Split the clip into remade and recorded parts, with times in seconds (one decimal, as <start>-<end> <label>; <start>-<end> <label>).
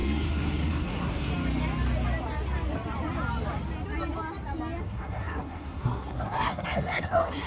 0.0-1.3 remade; 1.3-4.8 recorded; 4.8-7.5 remade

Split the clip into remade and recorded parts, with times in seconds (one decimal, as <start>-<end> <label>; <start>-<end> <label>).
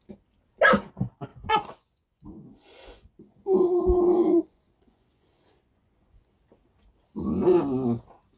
0.0-1.3 recorded; 1.3-6.3 remade; 6.3-8.4 recorded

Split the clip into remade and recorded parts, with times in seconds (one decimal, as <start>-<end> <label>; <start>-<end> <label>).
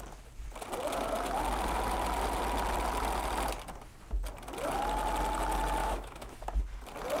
0.0-5.8 recorded; 5.8-6.4 remade; 6.4-7.2 recorded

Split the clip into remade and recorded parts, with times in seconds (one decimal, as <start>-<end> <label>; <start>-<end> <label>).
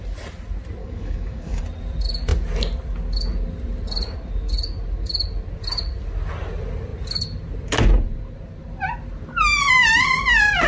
0.0-0.8 recorded; 0.8-1.6 remade; 1.6-10.7 recorded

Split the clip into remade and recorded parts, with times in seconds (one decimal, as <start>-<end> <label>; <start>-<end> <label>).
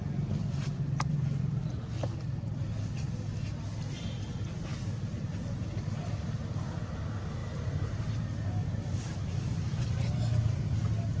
0.0-0.4 recorded; 0.4-1.9 remade; 1.9-7.4 recorded; 7.4-8.0 remade; 8.0-11.2 recorded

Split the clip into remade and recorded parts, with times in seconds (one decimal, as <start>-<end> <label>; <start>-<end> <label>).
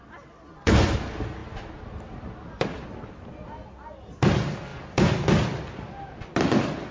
0.0-6.9 recorded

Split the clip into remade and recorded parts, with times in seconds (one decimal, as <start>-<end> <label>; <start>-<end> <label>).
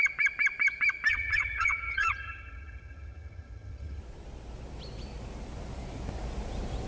0.0-1.1 recorded; 1.1-4.0 remade; 4.0-6.9 recorded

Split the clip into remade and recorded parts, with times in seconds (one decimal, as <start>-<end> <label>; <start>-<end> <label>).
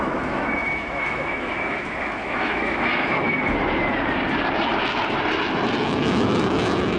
0.0-3.4 remade; 3.4-5.8 recorded; 5.8-7.0 remade